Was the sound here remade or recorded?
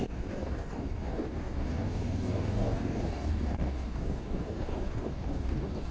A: remade